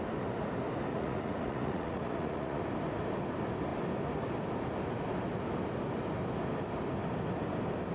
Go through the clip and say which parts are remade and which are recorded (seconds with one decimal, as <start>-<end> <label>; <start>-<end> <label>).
0.0-0.9 recorded; 0.9-2.6 remade; 2.6-7.9 recorded